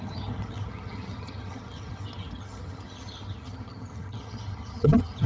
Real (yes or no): no